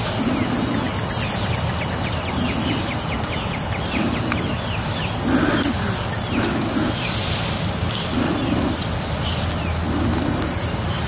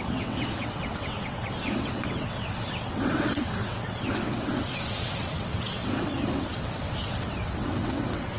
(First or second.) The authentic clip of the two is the first